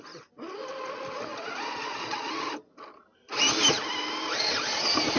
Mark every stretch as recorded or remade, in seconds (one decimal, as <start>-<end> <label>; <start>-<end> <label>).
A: 0.0-1.3 recorded; 1.3-2.3 remade; 2.3-5.2 recorded